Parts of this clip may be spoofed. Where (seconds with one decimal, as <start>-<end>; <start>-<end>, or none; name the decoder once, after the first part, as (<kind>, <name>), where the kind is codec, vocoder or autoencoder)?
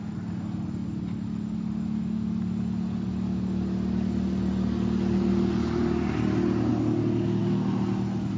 none